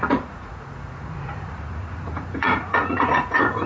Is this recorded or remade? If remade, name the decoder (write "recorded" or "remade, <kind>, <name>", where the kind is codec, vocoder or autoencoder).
remade, vocoder, Vocos